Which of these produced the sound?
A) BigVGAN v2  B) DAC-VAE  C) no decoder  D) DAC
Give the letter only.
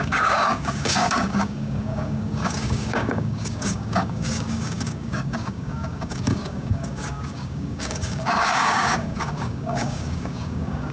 D